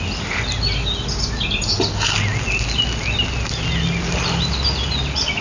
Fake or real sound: real